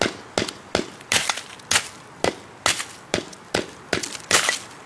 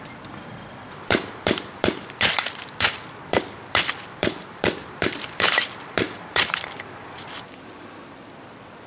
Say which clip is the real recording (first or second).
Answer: first